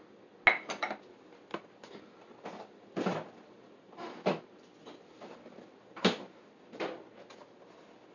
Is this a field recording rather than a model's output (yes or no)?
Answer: yes